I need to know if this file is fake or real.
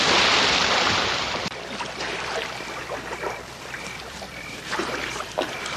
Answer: fake